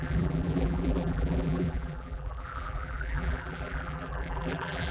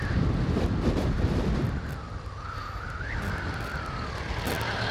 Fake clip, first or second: first